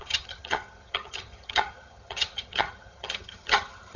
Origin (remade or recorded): remade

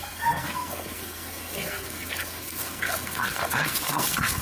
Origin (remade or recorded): remade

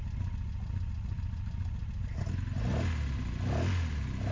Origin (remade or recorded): recorded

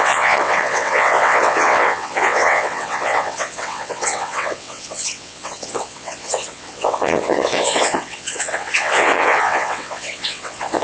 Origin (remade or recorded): remade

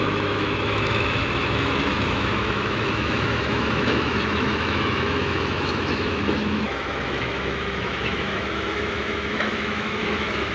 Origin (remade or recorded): remade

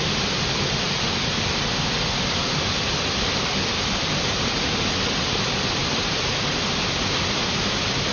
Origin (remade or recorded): recorded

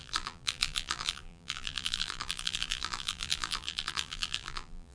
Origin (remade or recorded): remade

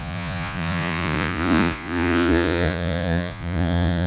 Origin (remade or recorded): remade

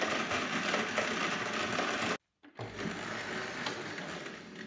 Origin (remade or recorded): recorded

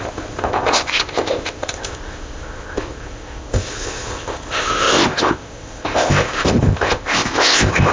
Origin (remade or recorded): remade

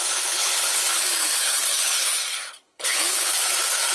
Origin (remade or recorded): remade